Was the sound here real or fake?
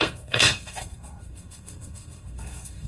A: fake